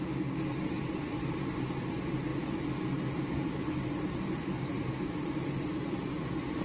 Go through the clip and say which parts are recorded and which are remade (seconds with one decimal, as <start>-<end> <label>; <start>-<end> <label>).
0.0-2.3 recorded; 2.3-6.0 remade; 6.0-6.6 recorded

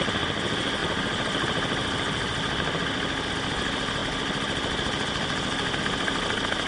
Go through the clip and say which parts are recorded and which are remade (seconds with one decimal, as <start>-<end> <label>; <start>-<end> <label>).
0.0-6.7 recorded

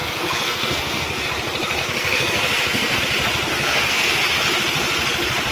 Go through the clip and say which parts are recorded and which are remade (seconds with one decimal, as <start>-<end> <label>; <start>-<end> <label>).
0.0-1.3 remade; 1.3-1.8 recorded; 1.8-3.0 remade; 3.0-3.5 recorded; 3.5-4.2 remade; 4.2-5.5 recorded